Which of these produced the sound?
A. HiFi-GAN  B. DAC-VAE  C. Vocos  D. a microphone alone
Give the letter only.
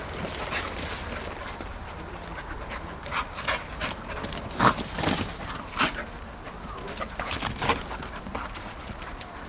D